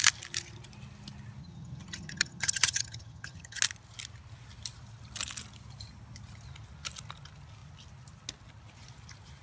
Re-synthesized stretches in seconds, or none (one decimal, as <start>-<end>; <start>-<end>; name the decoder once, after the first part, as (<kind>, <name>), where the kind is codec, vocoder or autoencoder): 1.4-3.6 (vocoder, HiFi-GAN)